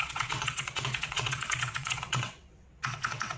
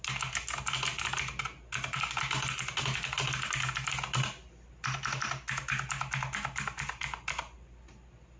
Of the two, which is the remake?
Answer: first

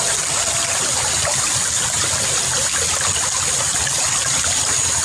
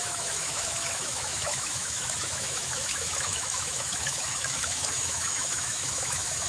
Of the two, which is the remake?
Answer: second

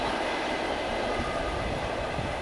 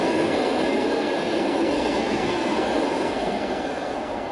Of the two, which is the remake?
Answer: second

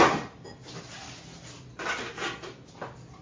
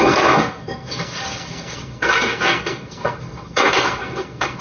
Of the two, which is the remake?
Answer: second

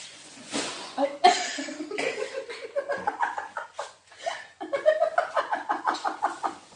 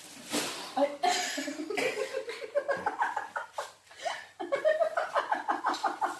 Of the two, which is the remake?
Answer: first